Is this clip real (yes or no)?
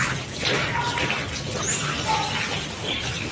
yes